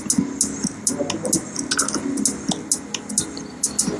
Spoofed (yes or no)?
no